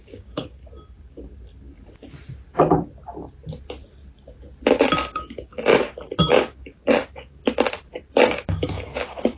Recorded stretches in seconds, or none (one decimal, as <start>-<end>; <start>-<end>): 0.6-5.1; 5.7-6.2; 7.4-8.1